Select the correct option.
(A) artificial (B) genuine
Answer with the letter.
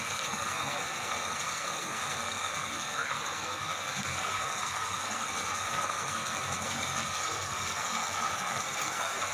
A